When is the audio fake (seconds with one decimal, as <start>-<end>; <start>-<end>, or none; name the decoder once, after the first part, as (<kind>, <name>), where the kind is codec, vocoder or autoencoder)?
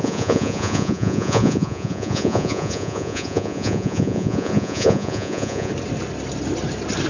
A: 0.0-5.7 (vocoder, Vocos)